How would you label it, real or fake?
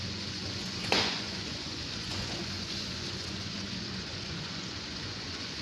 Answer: fake